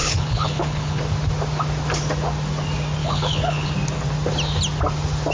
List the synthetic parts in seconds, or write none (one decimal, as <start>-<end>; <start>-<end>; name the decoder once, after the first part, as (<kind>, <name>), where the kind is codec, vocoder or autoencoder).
0.0-1.0 (codec, HILCodec); 3.0-3.7